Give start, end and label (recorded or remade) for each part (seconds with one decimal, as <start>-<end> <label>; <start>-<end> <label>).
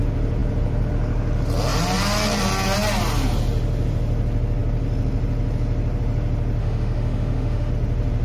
0.0-6.6 recorded; 6.6-7.7 remade; 7.7-8.2 recorded